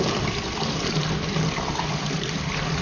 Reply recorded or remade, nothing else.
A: remade